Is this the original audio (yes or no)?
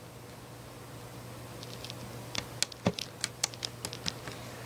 yes